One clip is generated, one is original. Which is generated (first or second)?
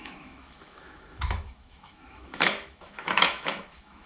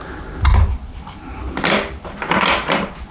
first